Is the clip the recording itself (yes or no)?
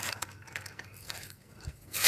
no